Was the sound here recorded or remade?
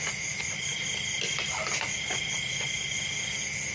recorded